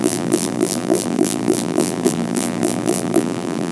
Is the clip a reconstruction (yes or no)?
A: yes